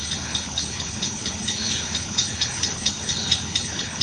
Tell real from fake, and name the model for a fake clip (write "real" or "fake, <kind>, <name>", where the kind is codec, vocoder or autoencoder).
fake, codec, HILCodec